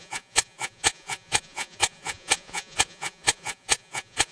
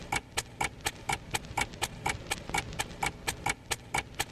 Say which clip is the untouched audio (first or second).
second